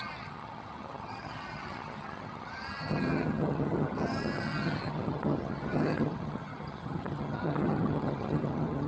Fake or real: fake